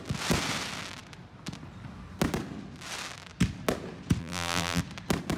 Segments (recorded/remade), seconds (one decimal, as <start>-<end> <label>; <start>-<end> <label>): 0.0-4.2 recorded; 4.2-4.8 remade; 4.8-5.4 recorded